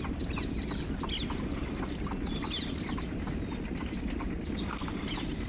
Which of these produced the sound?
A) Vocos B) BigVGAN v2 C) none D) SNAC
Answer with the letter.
C